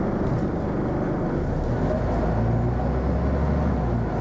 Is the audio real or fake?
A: real